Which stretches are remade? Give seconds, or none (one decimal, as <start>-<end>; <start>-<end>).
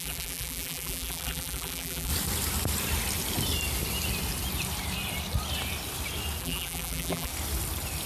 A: 0.0-2.1; 6.4-7.3